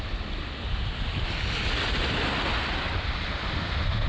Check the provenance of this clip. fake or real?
real